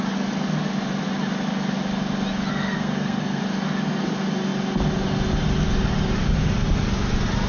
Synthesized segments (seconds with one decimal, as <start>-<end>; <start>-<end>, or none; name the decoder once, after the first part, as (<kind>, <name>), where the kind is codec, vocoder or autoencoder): 2.5-3.4 (codec, SNAC)